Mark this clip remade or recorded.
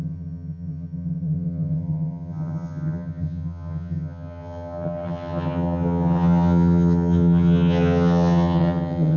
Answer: remade